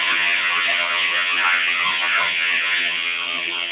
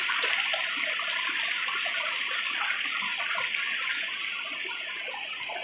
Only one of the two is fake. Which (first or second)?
first